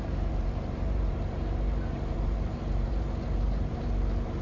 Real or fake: fake